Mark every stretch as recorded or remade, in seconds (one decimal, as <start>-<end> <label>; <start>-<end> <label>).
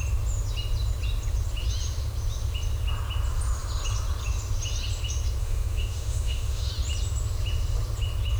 0.0-5.4 recorded; 5.4-6.7 remade; 6.7-8.4 recorded